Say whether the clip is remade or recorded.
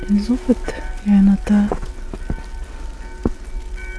recorded